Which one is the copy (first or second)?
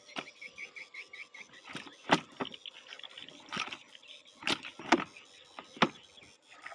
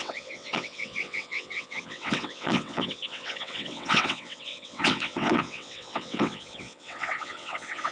second